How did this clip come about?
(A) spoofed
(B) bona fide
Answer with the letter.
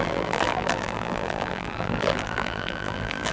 A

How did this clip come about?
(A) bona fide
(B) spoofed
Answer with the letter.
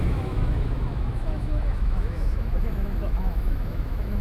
B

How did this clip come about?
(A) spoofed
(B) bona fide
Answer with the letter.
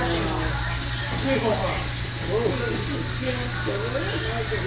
B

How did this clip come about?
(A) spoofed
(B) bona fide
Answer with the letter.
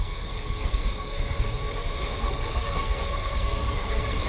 A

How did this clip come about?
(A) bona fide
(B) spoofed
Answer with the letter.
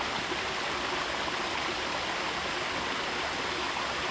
A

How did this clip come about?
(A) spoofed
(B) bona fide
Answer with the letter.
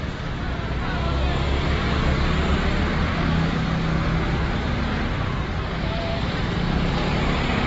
B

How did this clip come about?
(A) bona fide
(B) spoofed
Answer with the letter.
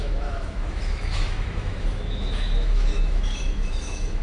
B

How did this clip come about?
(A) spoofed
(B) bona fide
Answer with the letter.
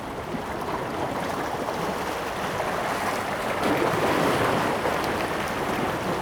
B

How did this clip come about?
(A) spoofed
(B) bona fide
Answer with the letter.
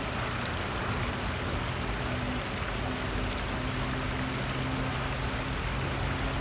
B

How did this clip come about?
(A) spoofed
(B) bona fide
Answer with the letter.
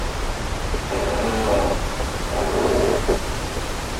A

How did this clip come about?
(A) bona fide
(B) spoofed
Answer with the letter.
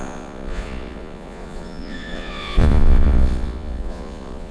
B